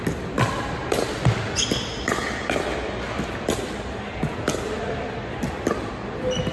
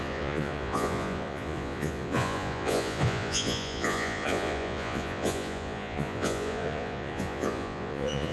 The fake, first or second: second